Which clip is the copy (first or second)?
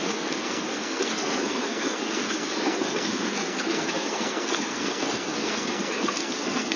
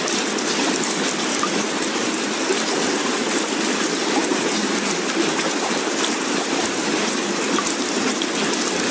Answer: first